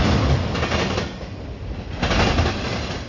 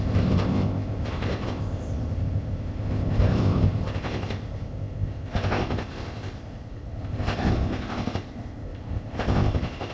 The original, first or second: first